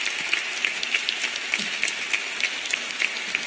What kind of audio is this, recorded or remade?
recorded